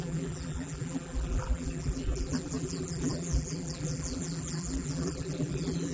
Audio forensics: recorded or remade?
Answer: remade